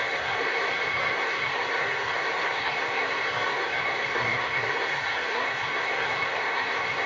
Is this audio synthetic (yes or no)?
yes